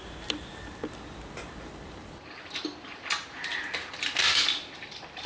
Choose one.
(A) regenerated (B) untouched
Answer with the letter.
A